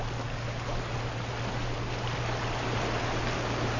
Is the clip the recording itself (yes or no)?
yes